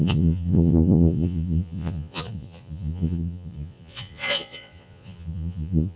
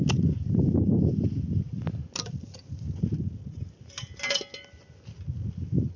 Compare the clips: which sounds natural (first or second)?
second